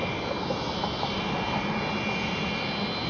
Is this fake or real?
real